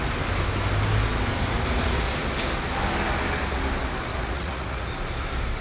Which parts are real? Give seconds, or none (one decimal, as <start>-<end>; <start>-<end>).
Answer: 0.0-4.1; 4.9-5.6